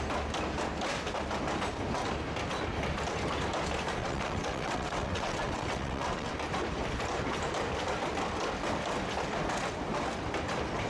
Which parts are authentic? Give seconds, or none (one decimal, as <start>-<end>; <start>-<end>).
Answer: 0.0-4.0; 6.3-10.9